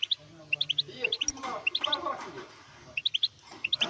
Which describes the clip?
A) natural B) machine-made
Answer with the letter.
A